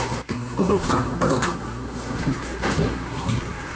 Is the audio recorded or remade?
remade